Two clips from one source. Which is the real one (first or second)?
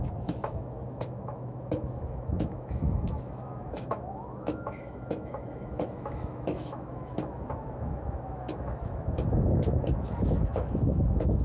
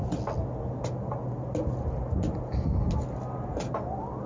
second